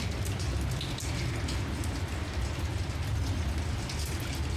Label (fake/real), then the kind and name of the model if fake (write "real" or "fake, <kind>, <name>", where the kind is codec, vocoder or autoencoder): real